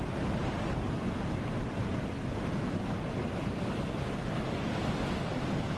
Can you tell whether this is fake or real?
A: real